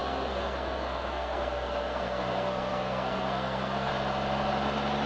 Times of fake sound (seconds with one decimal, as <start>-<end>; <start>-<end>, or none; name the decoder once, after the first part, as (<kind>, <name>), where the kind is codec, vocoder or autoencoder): 0.0-3.9 (codec, SNAC)